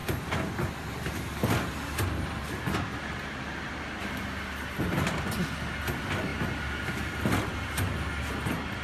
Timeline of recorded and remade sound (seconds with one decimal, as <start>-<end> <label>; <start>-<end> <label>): 0.0-8.8 recorded